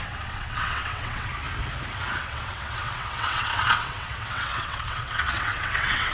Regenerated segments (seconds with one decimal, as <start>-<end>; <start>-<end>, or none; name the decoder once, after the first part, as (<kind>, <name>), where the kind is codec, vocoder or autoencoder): 0.0-1.3 (vocoder, WaveNeXt); 2.2-6.1